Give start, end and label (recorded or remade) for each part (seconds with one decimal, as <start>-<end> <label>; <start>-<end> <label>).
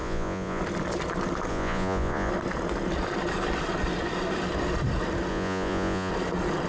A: 0.0-0.6 remade; 0.6-1.5 recorded; 1.5-2.3 remade; 2.3-5.3 recorded; 5.3-6.1 remade; 6.1-6.7 recorded